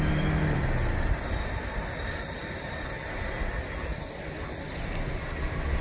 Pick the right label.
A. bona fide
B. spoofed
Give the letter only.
A